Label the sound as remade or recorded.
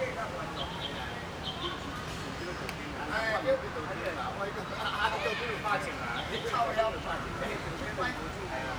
recorded